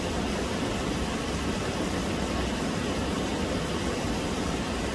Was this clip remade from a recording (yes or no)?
no